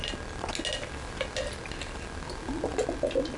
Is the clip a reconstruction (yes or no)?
no